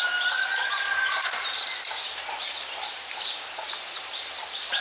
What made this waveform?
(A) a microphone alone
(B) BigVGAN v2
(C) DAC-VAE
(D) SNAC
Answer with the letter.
A